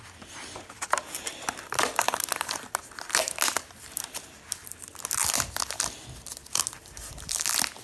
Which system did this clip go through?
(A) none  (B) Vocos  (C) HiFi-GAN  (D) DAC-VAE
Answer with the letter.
A